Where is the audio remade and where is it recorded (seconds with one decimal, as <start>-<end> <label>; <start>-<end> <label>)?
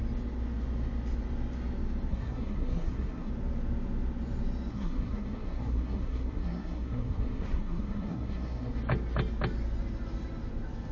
0.0-2.1 recorded; 2.1-3.3 remade; 3.3-4.7 recorded; 4.7-8.7 remade; 8.7-10.9 recorded